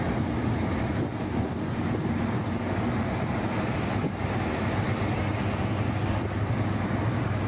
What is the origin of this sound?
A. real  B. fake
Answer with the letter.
A